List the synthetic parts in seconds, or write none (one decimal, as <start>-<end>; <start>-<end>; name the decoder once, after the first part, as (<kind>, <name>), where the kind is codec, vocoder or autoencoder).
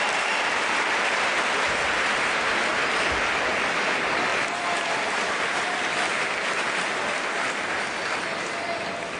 none